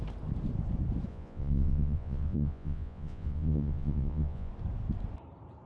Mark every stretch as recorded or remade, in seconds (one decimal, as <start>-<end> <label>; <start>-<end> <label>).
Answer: 0.0-1.1 recorded; 1.1-4.5 remade; 4.5-5.7 recorded